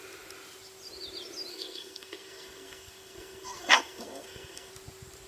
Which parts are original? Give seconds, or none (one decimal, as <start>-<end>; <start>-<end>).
0.0-1.5; 4.7-5.3